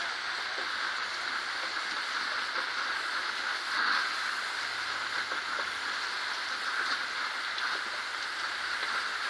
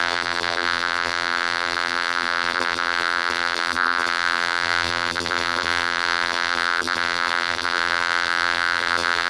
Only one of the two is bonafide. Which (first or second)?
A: first